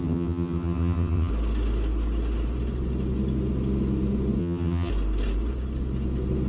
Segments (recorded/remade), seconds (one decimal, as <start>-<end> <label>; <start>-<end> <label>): 0.0-1.3 remade; 1.3-4.4 recorded; 4.4-4.9 remade; 4.9-6.5 recorded